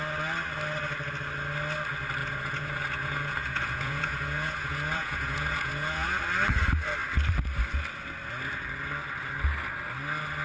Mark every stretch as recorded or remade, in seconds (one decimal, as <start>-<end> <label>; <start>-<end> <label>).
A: 0.0-2.2 recorded; 2.2-6.2 remade; 6.2-10.4 recorded